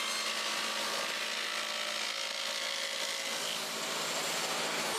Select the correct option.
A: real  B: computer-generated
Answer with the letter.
A